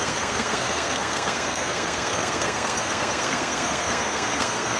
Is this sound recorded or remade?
remade